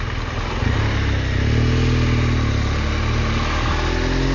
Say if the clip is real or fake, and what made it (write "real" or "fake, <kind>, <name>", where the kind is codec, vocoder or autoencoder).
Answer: real